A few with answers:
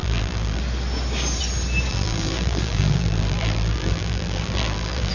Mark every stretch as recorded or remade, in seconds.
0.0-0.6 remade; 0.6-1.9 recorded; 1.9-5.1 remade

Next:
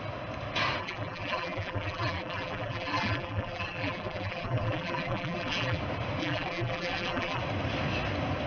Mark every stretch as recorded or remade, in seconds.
0.0-0.8 recorded; 0.8-5.8 remade; 5.8-6.2 recorded; 6.2-7.4 remade; 7.4-8.5 recorded

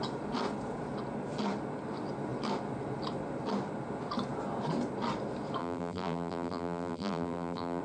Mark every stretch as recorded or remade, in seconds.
0.0-5.6 recorded; 5.6-7.8 remade

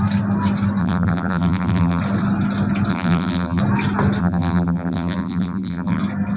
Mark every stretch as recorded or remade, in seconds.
0.0-0.8 recorded; 0.8-2.0 remade; 2.0-2.9 recorded; 2.9-3.6 remade; 3.6-4.2 recorded; 4.2-6.0 remade; 6.0-6.4 recorded

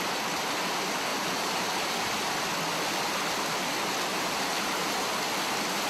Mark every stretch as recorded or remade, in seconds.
0.0-1.1 recorded; 1.1-2.0 remade; 2.0-4.1 recorded; 4.1-4.9 remade; 4.9-5.9 recorded

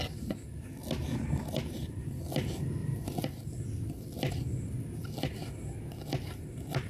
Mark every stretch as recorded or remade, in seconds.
0.0-6.9 recorded

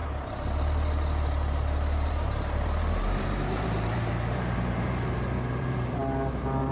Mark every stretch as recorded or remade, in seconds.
0.0-2.1 recorded; 2.1-6.0 remade; 6.0-6.7 recorded

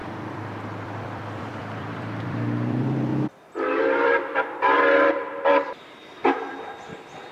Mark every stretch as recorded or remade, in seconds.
0.0-3.1 remade; 3.1-3.8 recorded; 3.8-6.2 remade; 6.2-6.8 recorded; 6.8-7.3 remade